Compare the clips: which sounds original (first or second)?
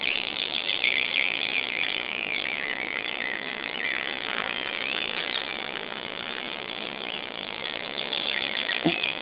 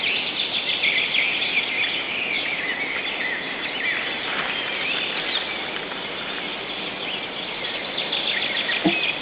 second